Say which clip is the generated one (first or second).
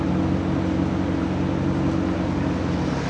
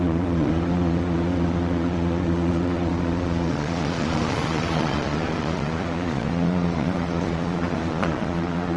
second